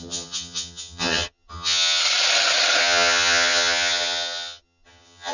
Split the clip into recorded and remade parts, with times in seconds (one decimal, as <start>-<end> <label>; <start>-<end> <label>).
0.0-2.0 remade; 2.0-2.8 recorded; 2.8-5.3 remade